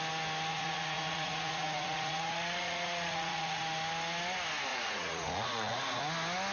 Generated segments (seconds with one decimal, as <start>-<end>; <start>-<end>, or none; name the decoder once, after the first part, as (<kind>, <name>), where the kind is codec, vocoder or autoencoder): 0.5-3.6 (vocoder, Vocos); 4.7-6.0